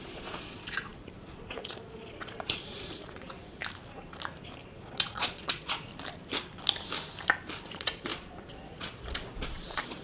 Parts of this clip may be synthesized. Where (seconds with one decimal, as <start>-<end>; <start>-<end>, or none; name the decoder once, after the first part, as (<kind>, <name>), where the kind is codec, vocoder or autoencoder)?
0.0-3.6 (vocoder, Vocos); 4.6-5.9; 7.7-10.0

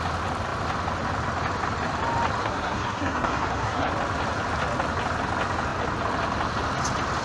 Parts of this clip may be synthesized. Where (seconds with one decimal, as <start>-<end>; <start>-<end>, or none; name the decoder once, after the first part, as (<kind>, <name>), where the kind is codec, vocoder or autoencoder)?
2.4-3.9 (codec, SNAC)

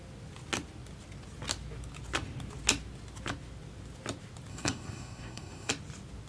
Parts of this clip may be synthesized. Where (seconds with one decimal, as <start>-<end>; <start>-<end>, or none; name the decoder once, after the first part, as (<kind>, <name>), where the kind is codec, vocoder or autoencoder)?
4.5-5.7 (codec, SNAC)